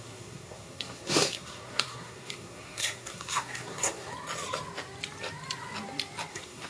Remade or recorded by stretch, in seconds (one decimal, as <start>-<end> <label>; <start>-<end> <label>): 0.0-4.1 remade; 4.1-6.3 recorded; 6.3-6.7 remade

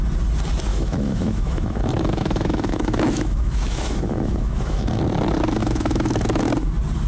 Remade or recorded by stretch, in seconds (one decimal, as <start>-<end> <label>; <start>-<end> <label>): 0.0-0.7 recorded; 0.7-5.0 remade; 5.0-5.6 recorded; 5.6-6.4 remade; 6.4-7.1 recorded

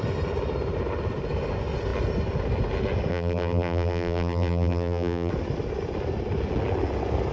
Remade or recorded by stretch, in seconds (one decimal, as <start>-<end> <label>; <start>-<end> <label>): 0.0-3.1 recorded; 3.1-5.3 remade; 5.3-7.3 recorded

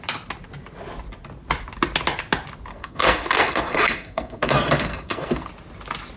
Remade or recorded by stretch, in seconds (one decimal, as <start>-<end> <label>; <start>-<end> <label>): 0.0-2.7 recorded; 2.7-5.5 remade; 5.5-6.2 recorded

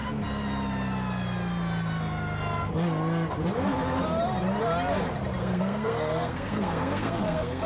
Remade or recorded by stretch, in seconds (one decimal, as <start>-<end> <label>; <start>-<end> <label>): 0.0-5.4 recorded; 5.4-7.7 remade

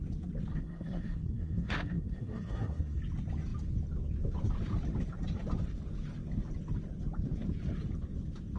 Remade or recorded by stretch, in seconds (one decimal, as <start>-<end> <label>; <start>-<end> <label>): 0.0-0.5 recorded; 0.5-3.0 remade; 3.0-8.6 recorded